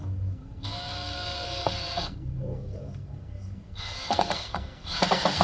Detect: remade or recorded remade